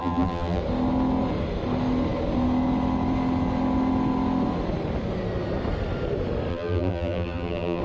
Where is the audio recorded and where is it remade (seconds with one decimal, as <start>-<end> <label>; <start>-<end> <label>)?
0.0-0.6 remade; 0.6-6.5 recorded; 6.5-7.8 remade

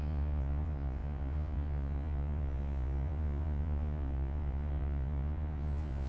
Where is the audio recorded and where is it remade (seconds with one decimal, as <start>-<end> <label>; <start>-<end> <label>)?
0.0-6.1 remade

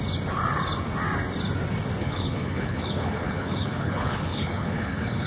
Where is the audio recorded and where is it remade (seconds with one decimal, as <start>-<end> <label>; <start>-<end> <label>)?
0.0-2.0 recorded; 2.0-5.3 remade

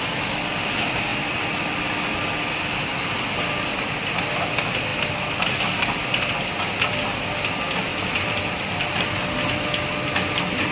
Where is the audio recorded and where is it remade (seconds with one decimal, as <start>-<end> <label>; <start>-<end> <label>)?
0.0-10.7 recorded

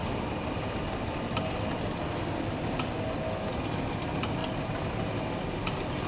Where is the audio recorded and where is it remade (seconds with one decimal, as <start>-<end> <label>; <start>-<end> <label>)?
0.0-6.1 recorded